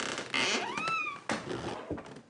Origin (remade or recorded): recorded